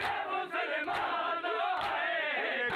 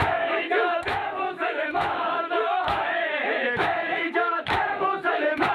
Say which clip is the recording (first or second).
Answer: first